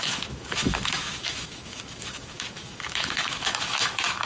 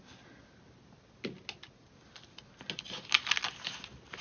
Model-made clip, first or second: first